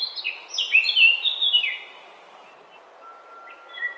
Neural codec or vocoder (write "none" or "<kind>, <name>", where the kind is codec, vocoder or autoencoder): none